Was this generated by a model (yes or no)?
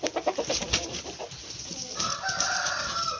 no